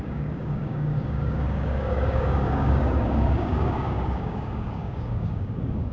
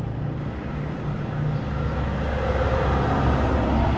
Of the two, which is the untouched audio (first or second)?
second